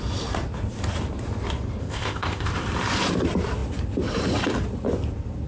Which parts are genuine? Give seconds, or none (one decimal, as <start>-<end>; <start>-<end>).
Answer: 0.0-1.8; 2.5-5.5